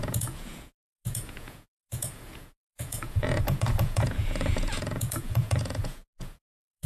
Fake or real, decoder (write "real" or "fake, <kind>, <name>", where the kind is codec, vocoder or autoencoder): fake, vocoder, Vocos